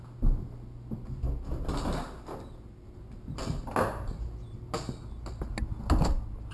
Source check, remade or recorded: recorded